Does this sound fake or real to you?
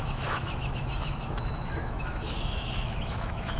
fake